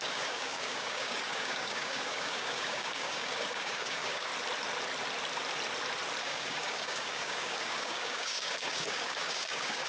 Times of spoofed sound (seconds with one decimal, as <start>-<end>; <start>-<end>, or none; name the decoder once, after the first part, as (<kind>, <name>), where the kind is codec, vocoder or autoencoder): 0.0-4.3 (codec, DAC); 6.2-9.9